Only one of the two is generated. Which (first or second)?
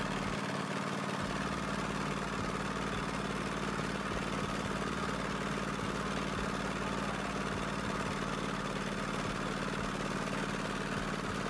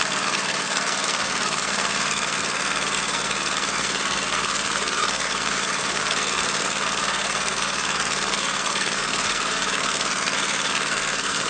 second